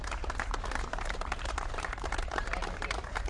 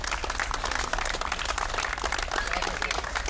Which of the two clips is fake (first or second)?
first